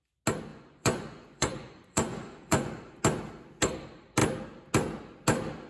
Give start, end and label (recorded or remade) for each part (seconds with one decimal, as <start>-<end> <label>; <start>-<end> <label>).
0.0-0.5 recorded; 0.5-3.0 remade; 3.0-5.7 recorded